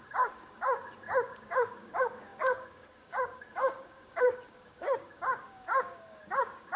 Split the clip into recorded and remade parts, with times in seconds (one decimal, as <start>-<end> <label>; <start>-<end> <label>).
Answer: 0.0-6.8 remade